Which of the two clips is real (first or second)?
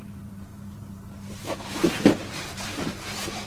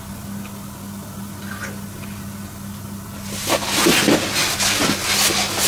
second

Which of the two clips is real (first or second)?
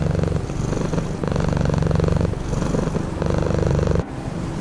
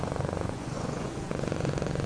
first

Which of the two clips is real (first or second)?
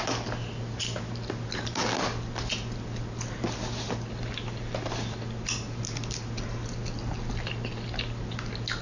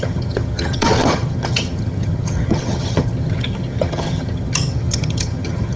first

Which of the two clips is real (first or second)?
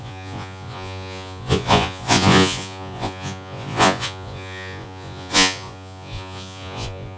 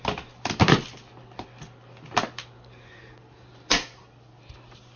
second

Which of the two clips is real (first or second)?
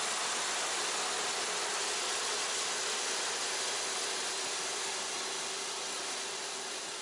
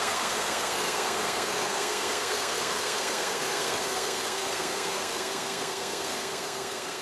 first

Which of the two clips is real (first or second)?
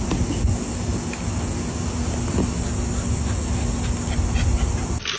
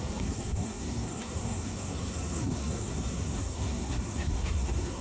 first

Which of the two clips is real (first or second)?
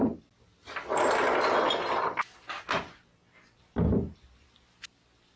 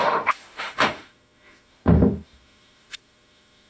first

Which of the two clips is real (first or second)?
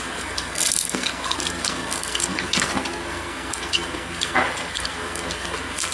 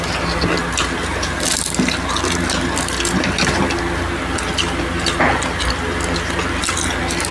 second